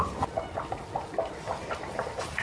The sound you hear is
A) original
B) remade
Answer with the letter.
A